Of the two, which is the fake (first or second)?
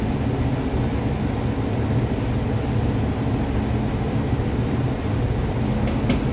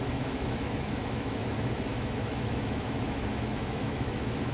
second